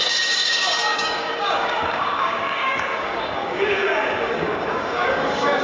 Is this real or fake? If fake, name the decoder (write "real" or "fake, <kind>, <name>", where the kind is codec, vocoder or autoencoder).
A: fake, codec, DAC